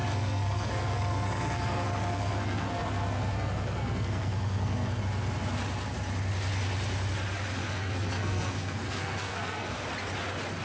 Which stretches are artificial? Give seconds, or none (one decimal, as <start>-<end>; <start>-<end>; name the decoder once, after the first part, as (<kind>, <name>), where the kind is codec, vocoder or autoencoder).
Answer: 0.0-5.0 (codec, SNAC); 7.6-9.8

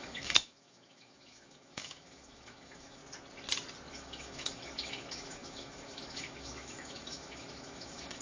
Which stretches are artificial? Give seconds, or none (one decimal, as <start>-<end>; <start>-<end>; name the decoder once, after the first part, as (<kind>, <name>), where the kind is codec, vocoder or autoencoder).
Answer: 0.0-3.0 (autoencoder, DAC-VAE); 3.9-8.2

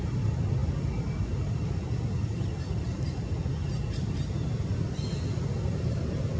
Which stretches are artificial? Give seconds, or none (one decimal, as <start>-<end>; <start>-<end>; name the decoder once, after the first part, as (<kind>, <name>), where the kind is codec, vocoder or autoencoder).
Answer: none